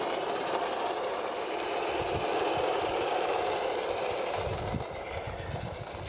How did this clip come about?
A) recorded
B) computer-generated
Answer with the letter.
A